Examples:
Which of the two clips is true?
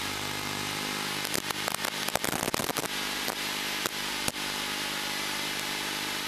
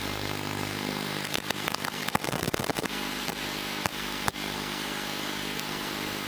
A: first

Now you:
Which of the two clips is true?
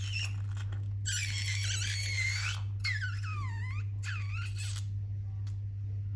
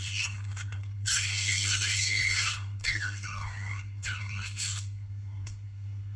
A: first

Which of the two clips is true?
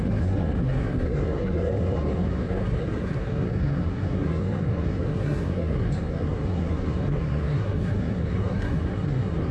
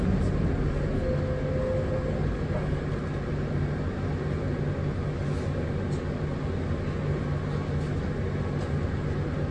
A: second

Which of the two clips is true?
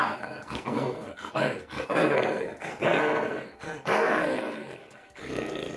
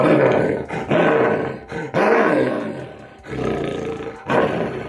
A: second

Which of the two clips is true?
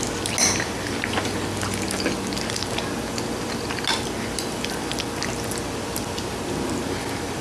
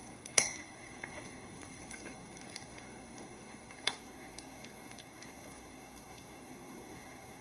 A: first